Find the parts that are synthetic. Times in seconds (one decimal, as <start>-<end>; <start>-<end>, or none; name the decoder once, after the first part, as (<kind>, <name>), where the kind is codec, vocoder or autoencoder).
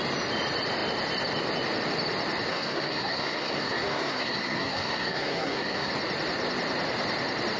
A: 2.5-5.9 (codec, SNAC)